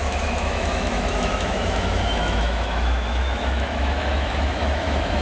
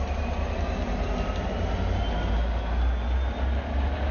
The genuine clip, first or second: second